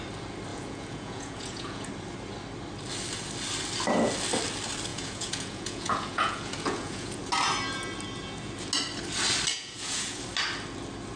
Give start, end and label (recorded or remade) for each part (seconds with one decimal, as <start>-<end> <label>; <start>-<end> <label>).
0.0-0.5 recorded; 0.5-1.9 remade; 1.9-4.9 recorded; 4.9-7.2 remade; 7.2-9.5 recorded; 9.5-10.2 remade; 10.2-11.2 recorded